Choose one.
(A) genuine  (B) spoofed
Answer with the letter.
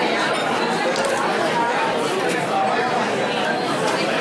A